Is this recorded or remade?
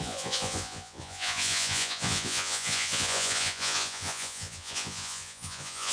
remade